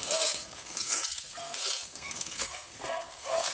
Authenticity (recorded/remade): remade